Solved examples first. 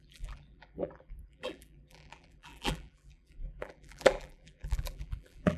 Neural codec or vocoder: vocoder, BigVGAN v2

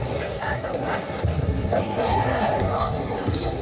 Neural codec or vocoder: codec, SNAC